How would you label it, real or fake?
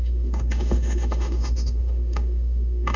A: fake